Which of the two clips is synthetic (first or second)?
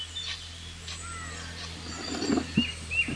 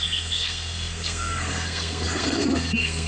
second